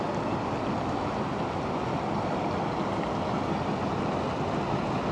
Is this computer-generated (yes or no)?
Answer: no